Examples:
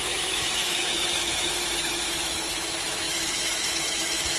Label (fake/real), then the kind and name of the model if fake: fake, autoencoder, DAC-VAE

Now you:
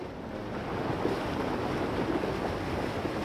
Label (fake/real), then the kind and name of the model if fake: real